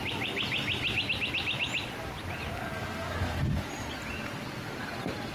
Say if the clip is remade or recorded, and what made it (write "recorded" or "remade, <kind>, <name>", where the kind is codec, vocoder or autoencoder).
recorded